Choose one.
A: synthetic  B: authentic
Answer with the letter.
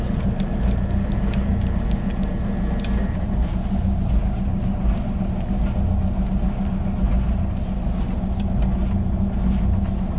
B